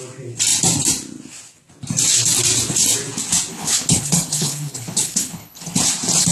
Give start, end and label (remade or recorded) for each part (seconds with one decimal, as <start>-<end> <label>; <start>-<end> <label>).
0.0-3.5 recorded; 3.5-5.8 remade; 5.8-6.3 recorded